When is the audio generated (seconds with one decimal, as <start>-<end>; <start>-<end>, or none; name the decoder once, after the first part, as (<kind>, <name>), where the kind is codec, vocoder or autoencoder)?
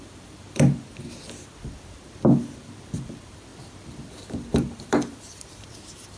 0.0-6.2 (vocoder, BigVGAN v2)